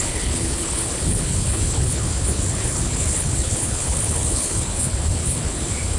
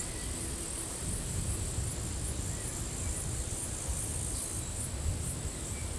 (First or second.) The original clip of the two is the second